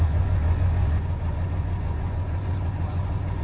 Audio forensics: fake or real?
fake